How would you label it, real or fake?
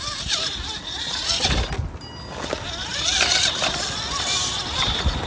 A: real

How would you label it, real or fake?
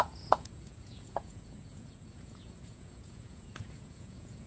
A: fake